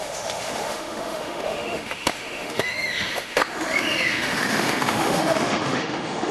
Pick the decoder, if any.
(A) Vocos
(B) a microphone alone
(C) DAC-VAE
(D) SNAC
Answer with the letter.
C